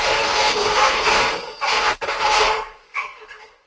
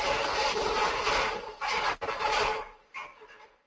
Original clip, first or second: second